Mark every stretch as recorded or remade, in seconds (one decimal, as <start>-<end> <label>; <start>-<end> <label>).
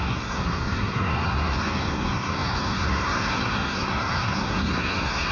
0.0-5.3 remade